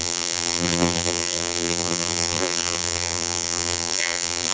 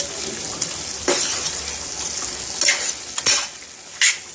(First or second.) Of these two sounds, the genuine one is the second